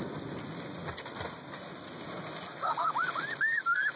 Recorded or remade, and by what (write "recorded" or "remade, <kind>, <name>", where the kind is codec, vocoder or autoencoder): remade, vocoder, BigVGAN v2